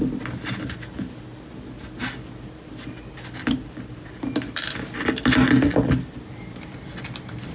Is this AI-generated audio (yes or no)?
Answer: no